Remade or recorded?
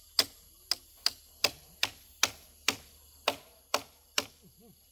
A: recorded